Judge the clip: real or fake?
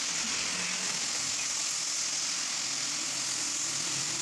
real